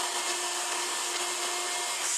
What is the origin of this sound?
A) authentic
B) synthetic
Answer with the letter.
A